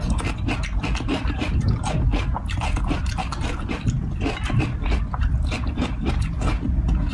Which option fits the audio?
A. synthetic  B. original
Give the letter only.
B